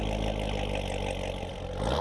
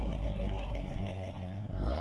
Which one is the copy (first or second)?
second